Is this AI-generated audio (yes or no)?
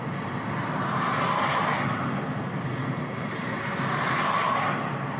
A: no